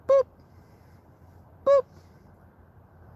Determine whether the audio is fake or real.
real